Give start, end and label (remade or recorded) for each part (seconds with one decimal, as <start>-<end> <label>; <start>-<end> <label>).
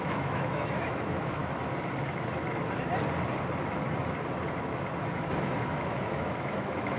0.0-1.4 remade; 1.4-5.0 recorded; 5.0-7.0 remade